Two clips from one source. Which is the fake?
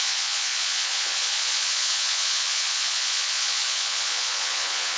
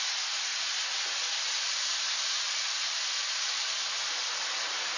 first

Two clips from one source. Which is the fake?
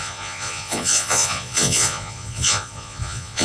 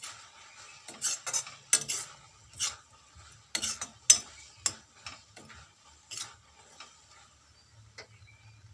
first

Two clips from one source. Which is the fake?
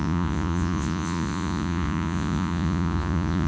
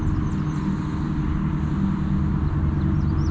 first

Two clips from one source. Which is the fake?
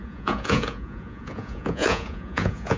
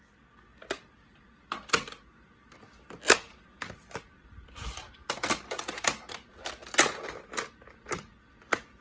first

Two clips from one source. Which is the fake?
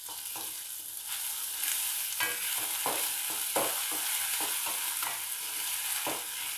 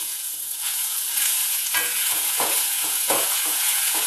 second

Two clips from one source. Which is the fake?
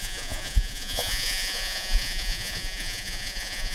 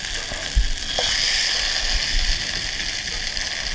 first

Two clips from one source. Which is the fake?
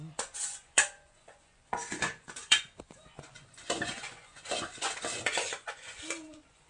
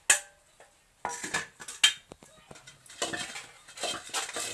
first